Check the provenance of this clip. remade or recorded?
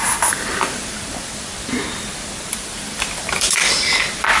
remade